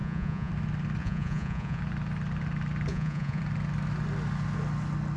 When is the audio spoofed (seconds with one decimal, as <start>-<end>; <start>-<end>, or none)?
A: 0.0-0.5; 1.0-1.8; 2.9-3.4